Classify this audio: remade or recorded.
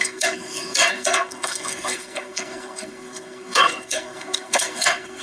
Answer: remade